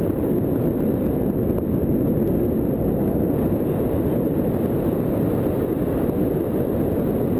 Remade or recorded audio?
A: recorded